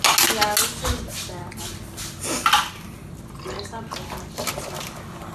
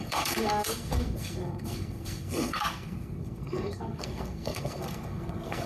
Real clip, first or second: first